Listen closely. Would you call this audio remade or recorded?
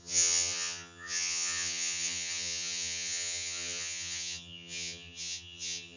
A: remade